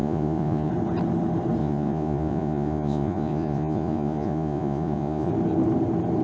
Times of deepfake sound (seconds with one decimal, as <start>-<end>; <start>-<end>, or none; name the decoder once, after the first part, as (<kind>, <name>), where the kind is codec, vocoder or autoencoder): 0.0-0.7 (vocoder, Vocos); 1.6-5.3